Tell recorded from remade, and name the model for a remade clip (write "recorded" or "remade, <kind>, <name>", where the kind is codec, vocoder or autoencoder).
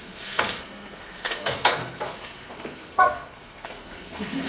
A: remade, codec, SNAC